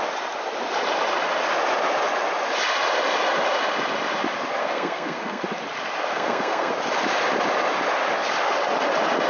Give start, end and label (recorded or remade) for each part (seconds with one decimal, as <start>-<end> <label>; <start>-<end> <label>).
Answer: 0.0-4.6 recorded; 4.6-5.4 remade; 5.4-6.1 recorded; 6.1-6.7 remade; 6.7-9.3 recorded